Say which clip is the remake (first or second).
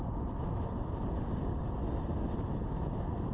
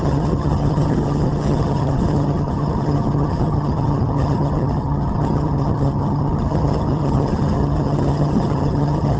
second